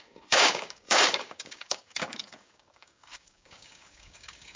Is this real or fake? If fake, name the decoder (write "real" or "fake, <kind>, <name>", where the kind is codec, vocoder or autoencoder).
fake, codec, DAC